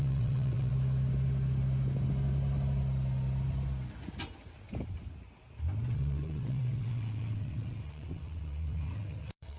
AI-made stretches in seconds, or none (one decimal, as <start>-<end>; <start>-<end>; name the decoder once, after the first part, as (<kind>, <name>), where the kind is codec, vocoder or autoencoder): 0.0-0.7 (vocoder, WaveNeXt); 5.9-9.6

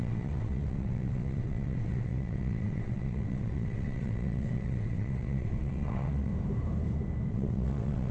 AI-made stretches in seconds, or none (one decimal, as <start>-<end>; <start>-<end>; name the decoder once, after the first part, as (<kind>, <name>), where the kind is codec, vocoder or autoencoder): 0.0-6.3 (vocoder, WaveNeXt); 7.3-8.1

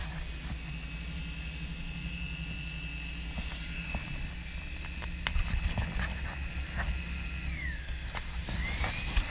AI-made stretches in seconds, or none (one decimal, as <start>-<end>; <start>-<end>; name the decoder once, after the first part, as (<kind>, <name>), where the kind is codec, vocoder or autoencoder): none

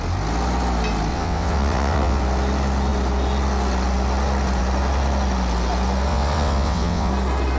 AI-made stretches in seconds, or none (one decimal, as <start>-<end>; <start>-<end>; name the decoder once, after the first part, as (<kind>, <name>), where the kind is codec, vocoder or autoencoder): 1.1-2.2 (vocoder, WaveNeXt); 6.1-7.1

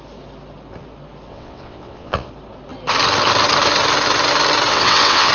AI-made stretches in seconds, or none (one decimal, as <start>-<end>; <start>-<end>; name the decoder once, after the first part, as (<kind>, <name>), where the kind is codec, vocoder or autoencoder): 1.3-2.3 (vocoder, WaveNeXt); 4.7-5.3